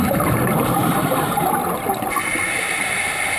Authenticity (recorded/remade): recorded